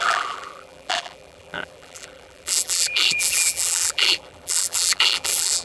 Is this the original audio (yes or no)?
no